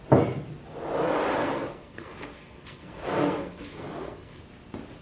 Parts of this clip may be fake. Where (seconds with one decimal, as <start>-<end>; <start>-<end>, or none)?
1.4-4.4